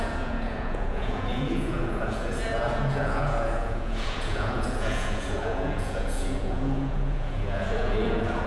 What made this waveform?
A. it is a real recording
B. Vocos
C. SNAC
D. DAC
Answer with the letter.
B